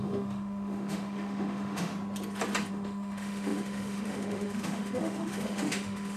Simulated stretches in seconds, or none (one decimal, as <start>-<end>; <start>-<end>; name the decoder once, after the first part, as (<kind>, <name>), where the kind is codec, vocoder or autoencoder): 0.0-1.9 (autoencoder, DAC-VAE); 2.7-6.2